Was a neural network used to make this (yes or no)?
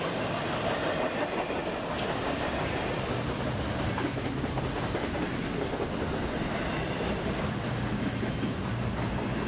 no